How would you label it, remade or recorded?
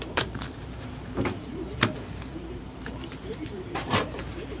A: remade